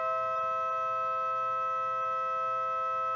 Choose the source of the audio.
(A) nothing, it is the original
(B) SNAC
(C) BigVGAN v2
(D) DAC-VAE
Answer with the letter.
A